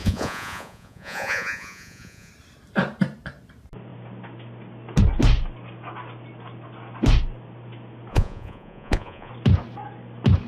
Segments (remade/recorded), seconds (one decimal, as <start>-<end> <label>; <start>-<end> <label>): 0.0-2.3 remade; 2.3-8.1 recorded; 8.1-9.3 remade; 9.3-10.5 recorded